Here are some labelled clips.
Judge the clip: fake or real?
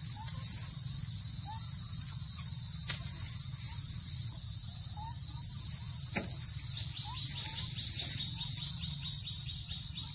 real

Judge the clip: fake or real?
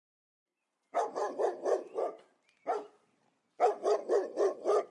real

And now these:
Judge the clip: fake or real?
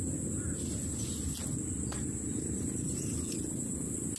real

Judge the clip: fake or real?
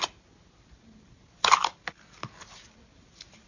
real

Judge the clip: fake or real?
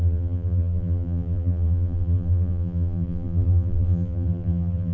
fake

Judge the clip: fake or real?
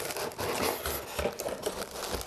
real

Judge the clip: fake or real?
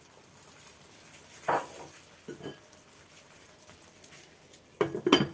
real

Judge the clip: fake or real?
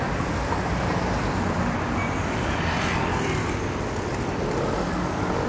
real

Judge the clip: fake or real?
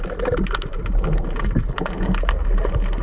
real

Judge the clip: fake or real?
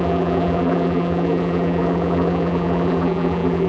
fake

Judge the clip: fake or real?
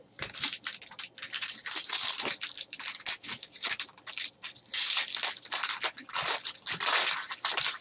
fake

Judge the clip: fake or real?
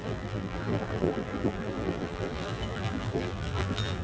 fake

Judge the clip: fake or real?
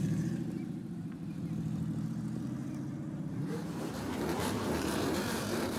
fake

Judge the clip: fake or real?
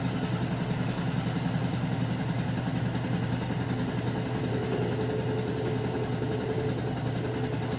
real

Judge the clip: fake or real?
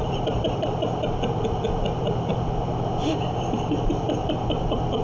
fake